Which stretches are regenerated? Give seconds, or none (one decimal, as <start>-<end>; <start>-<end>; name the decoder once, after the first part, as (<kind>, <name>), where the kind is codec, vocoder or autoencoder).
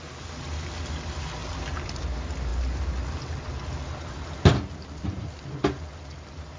1.4-2.0 (vocoder, BigVGAN v2); 4.5-5.4